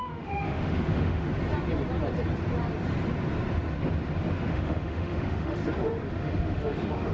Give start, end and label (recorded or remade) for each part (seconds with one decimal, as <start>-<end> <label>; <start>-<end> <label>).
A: 0.0-1.3 remade; 1.3-4.5 recorded; 4.5-5.6 remade; 5.6-6.2 recorded; 6.2-7.1 remade